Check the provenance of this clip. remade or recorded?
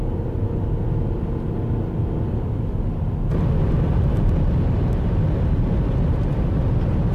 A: recorded